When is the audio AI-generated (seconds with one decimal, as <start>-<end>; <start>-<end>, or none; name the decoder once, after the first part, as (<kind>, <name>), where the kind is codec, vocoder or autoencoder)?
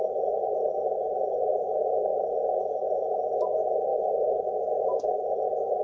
3.9-5.1 (autoencoder, DAC-VAE)